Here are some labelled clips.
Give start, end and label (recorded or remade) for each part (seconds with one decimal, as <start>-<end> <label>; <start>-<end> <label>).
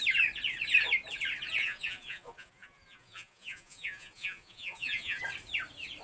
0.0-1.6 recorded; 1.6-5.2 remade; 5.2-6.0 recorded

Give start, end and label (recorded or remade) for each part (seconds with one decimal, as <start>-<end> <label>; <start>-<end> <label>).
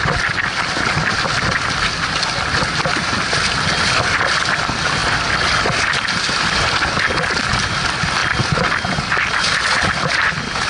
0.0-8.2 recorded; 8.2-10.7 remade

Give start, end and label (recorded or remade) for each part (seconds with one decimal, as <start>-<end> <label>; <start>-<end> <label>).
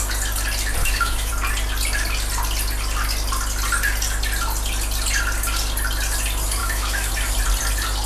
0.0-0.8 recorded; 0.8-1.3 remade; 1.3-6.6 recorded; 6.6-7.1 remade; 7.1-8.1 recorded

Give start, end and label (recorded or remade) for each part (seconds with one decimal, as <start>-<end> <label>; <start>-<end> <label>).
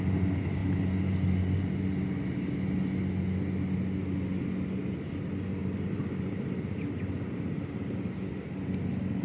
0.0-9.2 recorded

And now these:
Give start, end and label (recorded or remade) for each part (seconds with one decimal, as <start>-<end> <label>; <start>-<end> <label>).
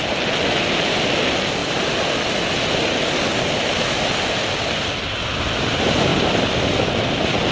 0.0-7.5 recorded